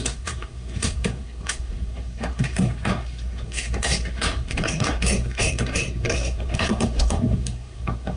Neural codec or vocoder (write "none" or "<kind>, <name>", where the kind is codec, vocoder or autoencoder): codec, SNAC